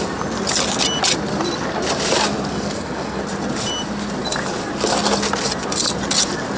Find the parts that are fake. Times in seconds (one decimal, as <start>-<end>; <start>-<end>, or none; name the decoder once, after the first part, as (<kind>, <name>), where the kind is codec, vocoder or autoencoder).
2.5-3.2 (codec, SNAC)